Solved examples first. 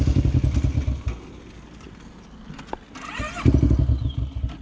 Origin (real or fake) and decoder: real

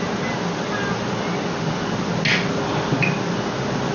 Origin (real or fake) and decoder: real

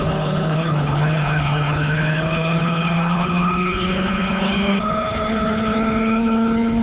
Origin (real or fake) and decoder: fake, codec, HILCodec